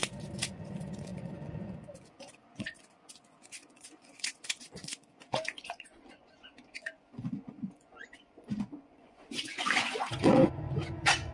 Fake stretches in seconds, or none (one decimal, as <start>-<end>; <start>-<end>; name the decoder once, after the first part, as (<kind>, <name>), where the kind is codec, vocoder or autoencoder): 0.5-11.3 (vocoder, Vocos)